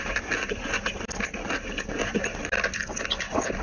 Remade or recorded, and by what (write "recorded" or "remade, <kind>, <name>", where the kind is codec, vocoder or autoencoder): recorded